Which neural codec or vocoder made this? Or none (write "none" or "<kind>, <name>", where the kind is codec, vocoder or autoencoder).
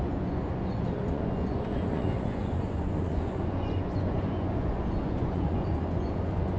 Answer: vocoder, Vocos